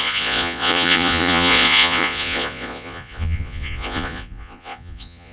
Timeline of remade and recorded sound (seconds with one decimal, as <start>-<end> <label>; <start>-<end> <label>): 0.0-5.3 remade